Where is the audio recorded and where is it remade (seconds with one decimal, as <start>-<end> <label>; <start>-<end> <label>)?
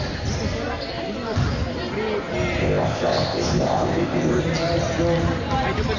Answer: 0.0-2.6 recorded; 2.6-4.4 remade; 4.4-6.0 recorded